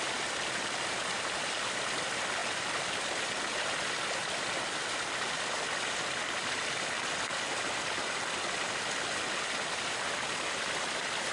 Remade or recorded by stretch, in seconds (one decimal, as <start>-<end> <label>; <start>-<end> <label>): 0.0-11.3 recorded